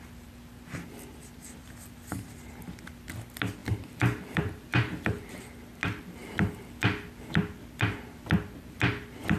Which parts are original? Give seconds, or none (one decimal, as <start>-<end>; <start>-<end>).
0.0-3.6; 5.5-9.4